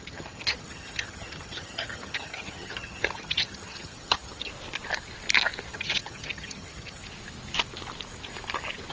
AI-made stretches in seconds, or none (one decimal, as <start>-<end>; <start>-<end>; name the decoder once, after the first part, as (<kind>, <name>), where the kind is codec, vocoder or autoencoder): 0.0-4.5 (vocoder, HiFi-GAN); 5.7-7.0